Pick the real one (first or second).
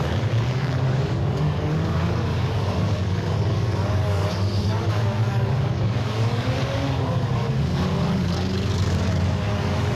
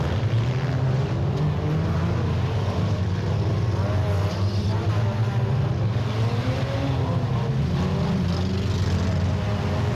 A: second